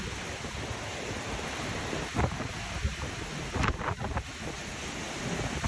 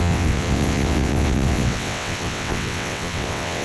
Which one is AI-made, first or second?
second